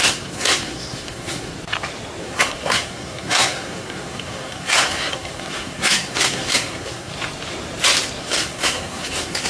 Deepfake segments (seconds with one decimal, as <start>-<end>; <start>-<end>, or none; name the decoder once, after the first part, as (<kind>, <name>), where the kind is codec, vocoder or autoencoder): 0.0-1.5 (codec, SNAC); 2.2-7.1; 8.2-9.5